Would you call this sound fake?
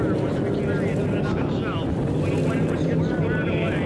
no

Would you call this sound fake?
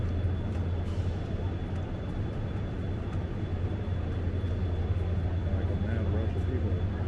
no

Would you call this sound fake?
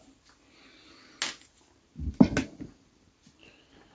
no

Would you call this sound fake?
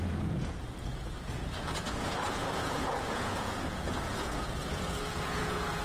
yes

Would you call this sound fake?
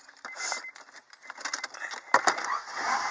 no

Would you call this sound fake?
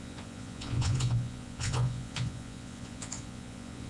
yes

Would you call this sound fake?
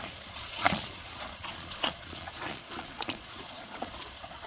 yes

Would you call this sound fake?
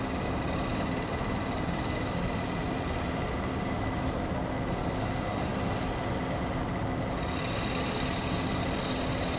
no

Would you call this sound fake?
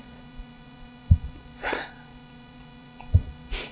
yes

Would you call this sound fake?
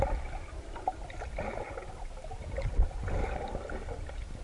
no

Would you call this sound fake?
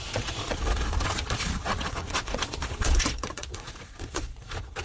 yes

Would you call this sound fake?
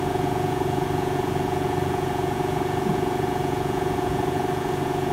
yes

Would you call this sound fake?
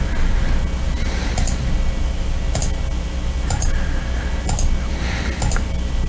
no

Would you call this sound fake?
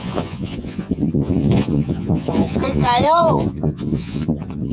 yes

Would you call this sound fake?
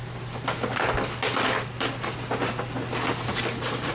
no